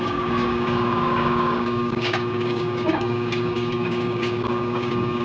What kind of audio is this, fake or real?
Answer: fake